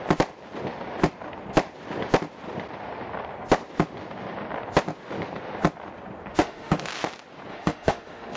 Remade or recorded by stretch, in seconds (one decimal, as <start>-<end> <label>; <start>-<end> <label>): 0.0-6.3 recorded; 6.3-6.9 remade; 6.9-7.5 recorded; 7.5-8.4 remade